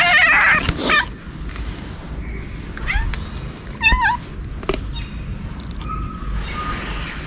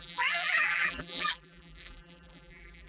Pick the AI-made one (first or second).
second